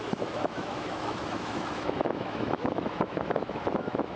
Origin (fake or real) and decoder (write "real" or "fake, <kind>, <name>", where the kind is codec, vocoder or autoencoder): fake, autoencoder, DAC-VAE